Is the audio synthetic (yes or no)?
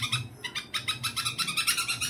no